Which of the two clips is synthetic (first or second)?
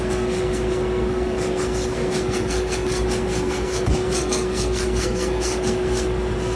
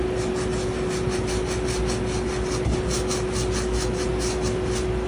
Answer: first